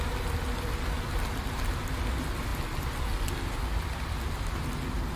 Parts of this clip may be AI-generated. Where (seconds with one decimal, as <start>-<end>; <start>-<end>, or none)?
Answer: none